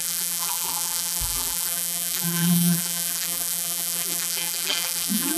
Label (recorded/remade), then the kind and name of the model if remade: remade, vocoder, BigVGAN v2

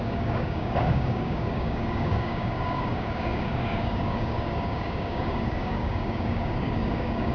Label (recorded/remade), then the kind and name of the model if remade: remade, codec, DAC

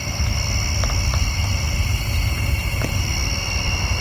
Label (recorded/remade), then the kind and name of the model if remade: recorded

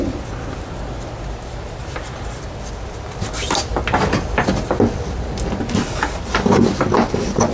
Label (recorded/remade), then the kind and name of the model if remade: recorded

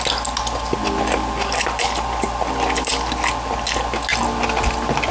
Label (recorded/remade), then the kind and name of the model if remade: recorded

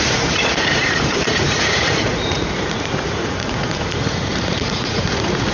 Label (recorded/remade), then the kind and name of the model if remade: remade, vocoder, Vocos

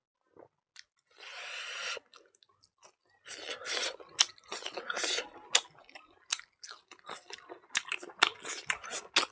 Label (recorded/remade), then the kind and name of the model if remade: recorded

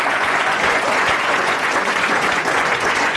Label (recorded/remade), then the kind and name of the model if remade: remade, vocoder, Vocos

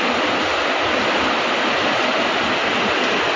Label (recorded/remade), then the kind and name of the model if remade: recorded